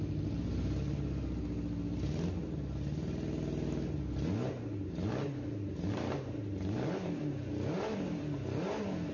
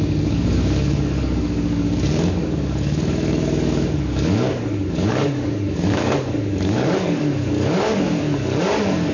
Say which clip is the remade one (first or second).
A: second